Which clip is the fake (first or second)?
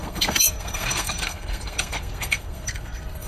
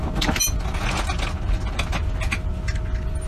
first